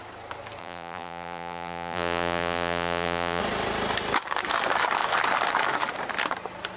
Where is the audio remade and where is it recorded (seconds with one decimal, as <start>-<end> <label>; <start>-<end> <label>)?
0.0-0.6 recorded; 0.6-3.4 remade; 3.4-6.8 recorded